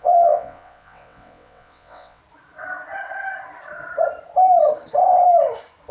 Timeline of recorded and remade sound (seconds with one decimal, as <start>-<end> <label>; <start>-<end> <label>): 0.0-2.2 remade; 2.2-5.9 recorded